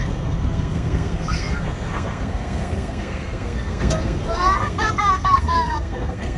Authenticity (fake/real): fake